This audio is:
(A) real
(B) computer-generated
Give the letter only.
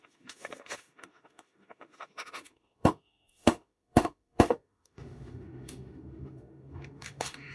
B